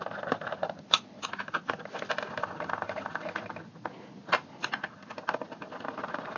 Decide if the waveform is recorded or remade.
recorded